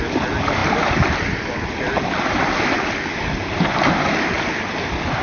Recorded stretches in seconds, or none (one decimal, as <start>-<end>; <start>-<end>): 0.0-5.2